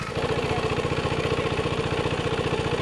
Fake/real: real